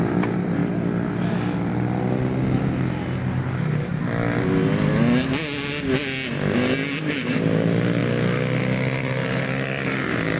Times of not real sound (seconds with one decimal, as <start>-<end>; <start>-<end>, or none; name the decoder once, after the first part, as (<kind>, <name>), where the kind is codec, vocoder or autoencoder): 0.0-0.6 (vocoder, BigVGAN v2); 3.5-3.9; 7.2-8.0; 8.6-10.4